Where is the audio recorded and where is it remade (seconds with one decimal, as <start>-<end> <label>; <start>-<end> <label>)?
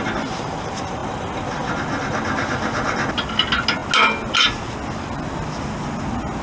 0.0-6.4 recorded